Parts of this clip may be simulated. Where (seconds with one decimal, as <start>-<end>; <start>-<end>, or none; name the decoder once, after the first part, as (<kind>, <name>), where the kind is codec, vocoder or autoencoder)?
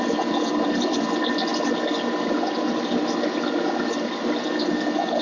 none